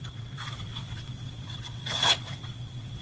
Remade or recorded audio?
remade